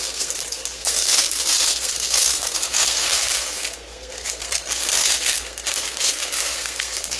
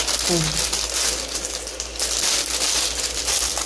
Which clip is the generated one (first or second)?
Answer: first